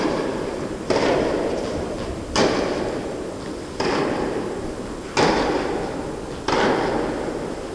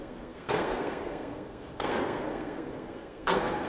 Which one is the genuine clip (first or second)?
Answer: first